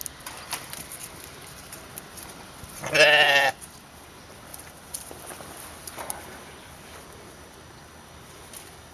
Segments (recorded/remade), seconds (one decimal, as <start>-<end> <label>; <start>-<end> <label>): 0.0-8.9 recorded